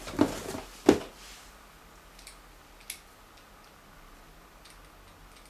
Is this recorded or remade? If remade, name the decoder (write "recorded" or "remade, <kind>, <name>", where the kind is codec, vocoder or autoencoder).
recorded